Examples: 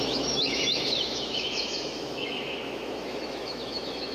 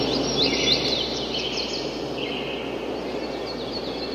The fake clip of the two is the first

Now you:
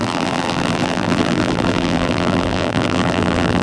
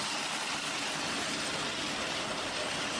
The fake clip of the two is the first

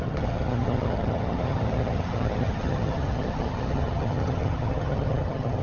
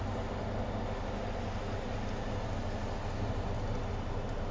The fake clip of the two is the first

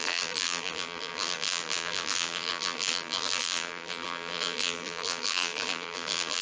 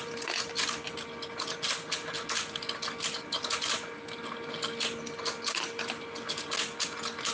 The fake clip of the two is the first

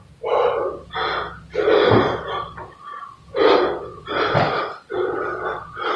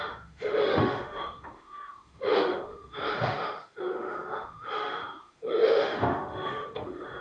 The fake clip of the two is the second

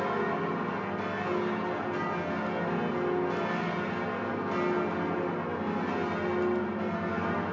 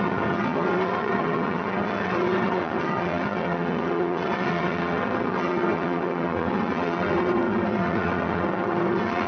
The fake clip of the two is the second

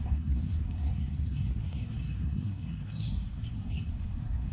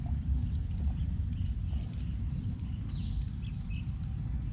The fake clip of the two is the first